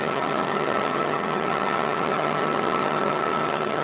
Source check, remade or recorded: remade